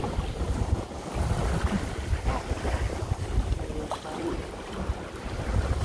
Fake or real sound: real